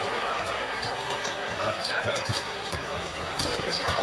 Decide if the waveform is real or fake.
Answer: fake